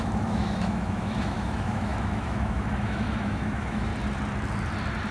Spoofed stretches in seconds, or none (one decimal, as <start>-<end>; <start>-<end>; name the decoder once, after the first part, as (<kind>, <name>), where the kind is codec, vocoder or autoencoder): 0.0-3.9 (autoencoder, DAC-VAE)

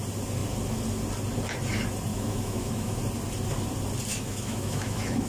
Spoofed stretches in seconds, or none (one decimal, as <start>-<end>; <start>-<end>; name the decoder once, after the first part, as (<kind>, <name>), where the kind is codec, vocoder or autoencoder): 2.1-3.0 (autoencoder, DAC-VAE); 4.1-5.3

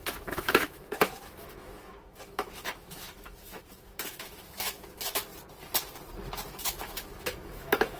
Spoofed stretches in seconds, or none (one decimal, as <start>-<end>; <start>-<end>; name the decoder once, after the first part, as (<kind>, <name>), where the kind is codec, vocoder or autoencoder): 0.0-5.3 (autoencoder, DAC-VAE); 6.6-8.0

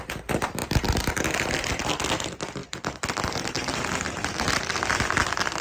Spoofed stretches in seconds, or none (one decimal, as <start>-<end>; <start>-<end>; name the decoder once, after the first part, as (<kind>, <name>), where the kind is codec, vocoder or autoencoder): none

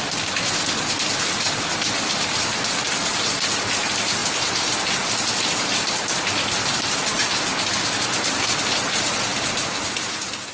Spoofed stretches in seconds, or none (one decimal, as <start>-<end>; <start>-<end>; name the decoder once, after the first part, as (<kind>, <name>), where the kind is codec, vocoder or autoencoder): none

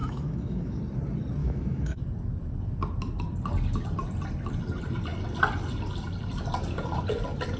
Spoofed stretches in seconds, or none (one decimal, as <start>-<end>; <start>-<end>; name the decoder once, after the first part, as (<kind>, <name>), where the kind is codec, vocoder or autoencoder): 0.0-0.8 (autoencoder, DAC-VAE); 1.4-2.0